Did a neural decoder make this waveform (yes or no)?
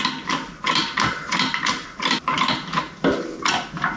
no